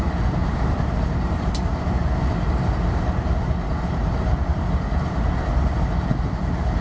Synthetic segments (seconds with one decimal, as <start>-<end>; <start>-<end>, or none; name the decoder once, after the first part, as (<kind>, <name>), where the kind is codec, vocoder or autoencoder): 0.4-1.8 (vocoder, BigVGAN v2); 4.5-5.3